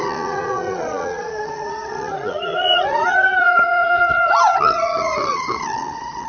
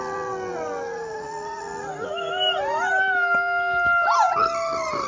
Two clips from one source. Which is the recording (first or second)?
second